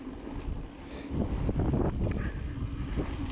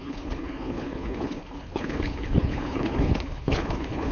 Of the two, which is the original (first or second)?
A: first